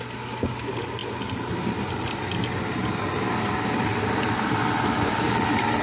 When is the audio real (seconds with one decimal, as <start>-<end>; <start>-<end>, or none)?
0.0-5.8